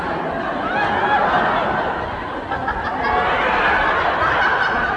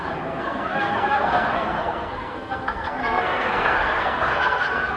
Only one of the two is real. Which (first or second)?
first